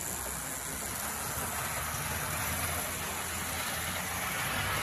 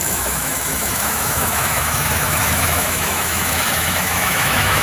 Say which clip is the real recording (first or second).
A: first